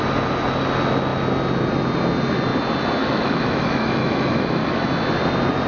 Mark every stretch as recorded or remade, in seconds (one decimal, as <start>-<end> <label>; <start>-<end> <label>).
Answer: 0.0-3.0 recorded; 3.0-4.8 remade; 4.8-5.7 recorded